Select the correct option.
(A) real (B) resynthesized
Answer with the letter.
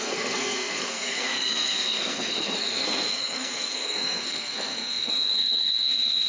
B